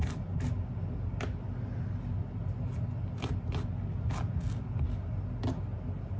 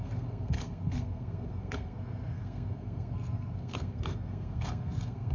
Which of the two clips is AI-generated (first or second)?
second